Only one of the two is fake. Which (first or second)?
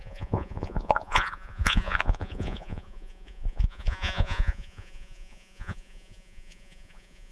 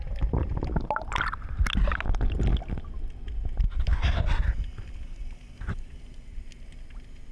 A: first